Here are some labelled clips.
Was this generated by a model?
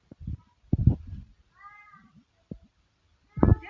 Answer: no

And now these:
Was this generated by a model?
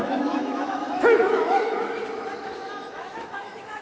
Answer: yes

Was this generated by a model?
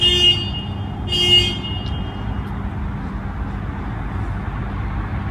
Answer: no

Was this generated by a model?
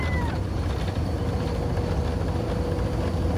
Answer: no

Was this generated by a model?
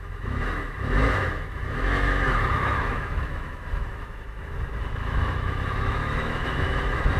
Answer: yes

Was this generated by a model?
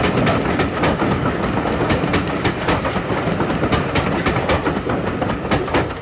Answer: no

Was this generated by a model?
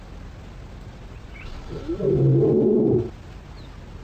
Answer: no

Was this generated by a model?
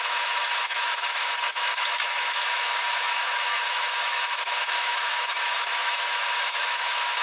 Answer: yes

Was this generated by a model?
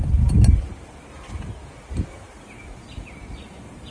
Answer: no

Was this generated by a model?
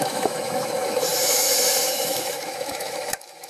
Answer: yes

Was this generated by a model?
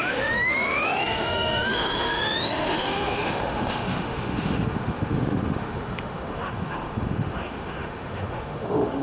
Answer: yes